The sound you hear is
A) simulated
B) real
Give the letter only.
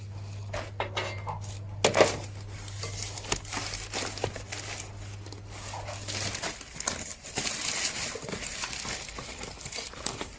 B